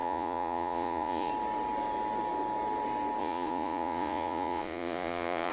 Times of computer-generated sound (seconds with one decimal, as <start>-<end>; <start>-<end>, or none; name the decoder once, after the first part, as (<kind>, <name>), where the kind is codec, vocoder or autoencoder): 0.0-1.3 (vocoder, Vocos); 3.2-5.5

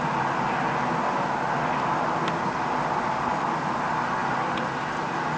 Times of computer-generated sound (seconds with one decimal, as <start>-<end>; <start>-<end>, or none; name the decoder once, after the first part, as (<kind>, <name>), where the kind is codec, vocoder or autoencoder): none

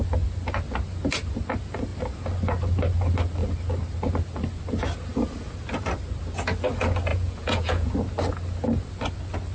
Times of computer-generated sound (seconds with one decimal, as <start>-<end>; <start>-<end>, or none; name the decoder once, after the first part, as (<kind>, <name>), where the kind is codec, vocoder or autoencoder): 7.1-7.9 (vocoder, Vocos)

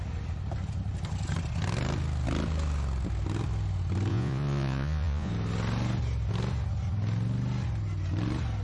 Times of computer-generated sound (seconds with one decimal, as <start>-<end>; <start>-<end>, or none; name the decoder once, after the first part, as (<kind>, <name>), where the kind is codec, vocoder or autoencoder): 4.1-5.3 (vocoder, Vocos)

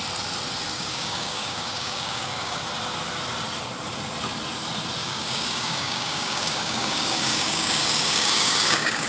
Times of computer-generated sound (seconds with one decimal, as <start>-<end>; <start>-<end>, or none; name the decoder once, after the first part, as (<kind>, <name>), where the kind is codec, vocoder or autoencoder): 0.7-2.6 (codec, DAC); 5.0-9.1